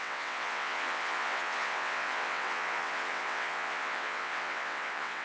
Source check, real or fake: fake